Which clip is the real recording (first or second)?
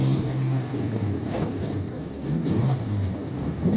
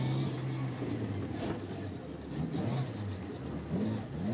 second